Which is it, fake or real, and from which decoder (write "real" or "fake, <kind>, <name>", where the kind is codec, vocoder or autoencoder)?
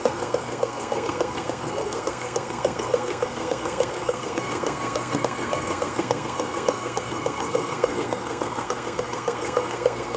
fake, codec, SNAC